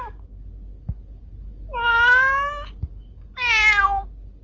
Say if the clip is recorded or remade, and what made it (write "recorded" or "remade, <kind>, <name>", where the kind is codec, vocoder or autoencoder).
recorded